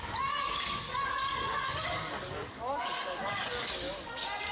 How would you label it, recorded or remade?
remade